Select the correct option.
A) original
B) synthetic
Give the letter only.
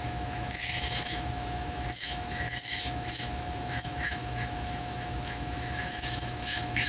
B